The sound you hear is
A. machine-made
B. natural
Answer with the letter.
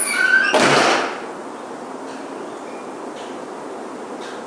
B